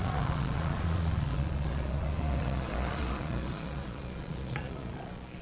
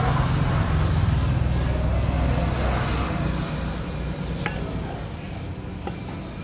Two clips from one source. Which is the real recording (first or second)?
second